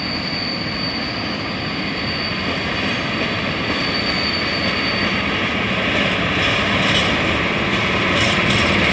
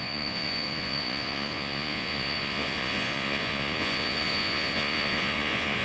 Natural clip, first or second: first